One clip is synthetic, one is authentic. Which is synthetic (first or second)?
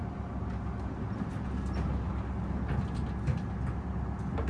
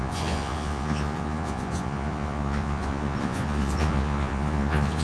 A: second